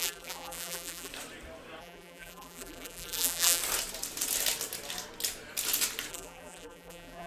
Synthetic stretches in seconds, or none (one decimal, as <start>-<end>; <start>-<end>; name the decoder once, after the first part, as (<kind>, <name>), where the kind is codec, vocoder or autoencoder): 0.0-1.1 (vocoder, BigVGAN v2); 1.8-3.6; 6.1-7.3